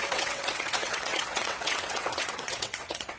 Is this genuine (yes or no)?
no